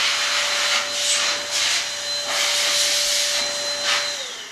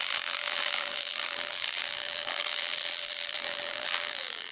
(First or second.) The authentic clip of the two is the first